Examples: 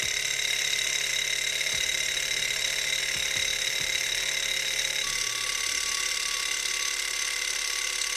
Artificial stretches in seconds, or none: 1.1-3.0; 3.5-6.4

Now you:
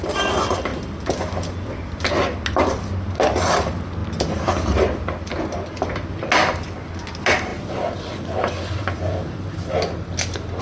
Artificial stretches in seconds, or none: none

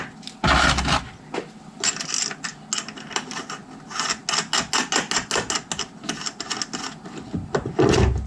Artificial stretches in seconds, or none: none

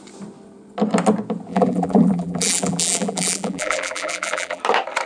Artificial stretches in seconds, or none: 1.5-4.6

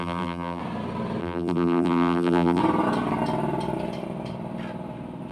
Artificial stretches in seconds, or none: 0.0-0.6; 1.2-2.6